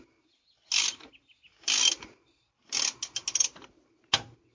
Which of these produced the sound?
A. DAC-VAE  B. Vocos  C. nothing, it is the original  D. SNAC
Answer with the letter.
C